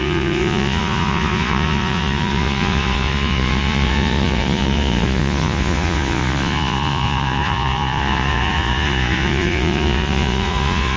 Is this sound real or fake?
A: fake